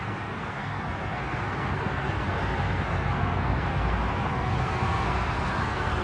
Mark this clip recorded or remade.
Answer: remade